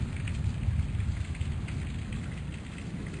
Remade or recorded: recorded